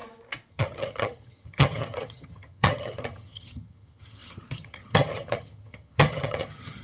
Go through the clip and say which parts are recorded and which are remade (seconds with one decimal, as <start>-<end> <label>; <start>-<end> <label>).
0.0-0.5 recorded; 0.5-6.8 remade